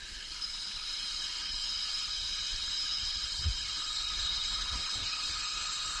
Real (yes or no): no